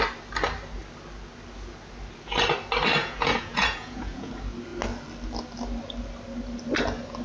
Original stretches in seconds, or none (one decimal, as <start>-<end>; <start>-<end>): 0.0-3.0; 4.3-7.2